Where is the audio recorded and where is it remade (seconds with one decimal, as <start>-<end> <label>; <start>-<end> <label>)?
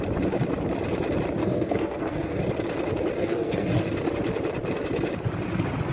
0.0-1.4 recorded; 1.4-2.4 remade; 2.4-3.2 recorded; 3.2-3.7 remade; 3.7-5.9 recorded